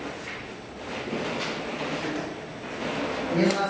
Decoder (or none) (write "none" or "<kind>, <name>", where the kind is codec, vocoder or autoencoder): none